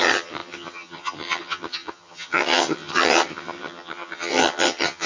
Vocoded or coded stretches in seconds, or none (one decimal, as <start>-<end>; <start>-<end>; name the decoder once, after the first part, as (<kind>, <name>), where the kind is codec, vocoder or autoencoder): 0.0-5.1 (vocoder, HiFi-GAN)